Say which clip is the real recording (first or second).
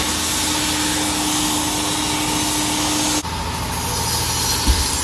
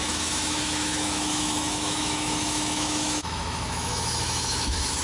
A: first